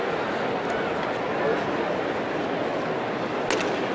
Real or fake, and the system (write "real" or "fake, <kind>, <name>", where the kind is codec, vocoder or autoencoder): real